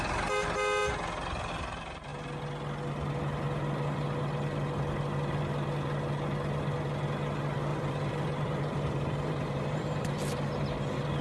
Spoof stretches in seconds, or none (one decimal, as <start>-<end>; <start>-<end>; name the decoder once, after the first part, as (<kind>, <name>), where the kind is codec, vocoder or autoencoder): 7.7-10.2 (vocoder, BigVGAN v2)